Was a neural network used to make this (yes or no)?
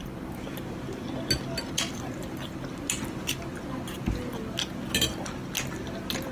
no